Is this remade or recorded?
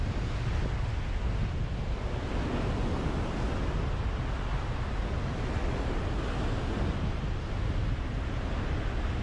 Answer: recorded